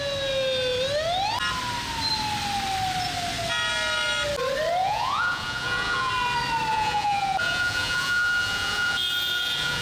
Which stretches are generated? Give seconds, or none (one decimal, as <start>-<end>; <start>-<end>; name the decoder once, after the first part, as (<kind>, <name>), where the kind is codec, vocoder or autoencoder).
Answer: 4.8-6.1 (vocoder, Vocos); 6.7-9.8